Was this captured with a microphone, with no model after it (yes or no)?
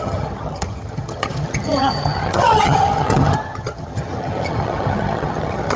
no